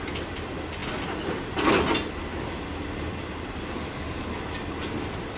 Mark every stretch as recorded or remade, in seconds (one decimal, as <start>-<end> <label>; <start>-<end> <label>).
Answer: 0.0-5.4 recorded